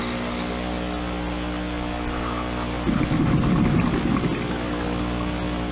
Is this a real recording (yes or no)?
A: yes